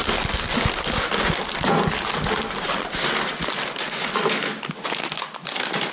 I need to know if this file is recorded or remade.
recorded